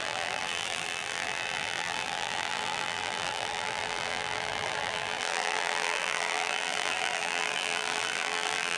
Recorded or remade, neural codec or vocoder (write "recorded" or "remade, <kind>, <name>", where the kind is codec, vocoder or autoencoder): remade, vocoder, BigVGAN v2